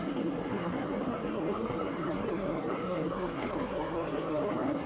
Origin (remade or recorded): remade